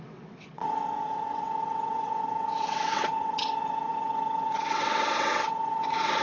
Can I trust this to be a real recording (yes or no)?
no